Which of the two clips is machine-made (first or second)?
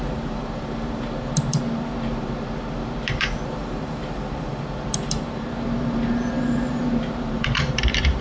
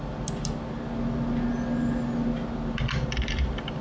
first